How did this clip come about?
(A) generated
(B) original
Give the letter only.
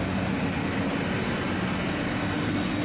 B